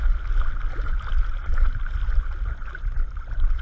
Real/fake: real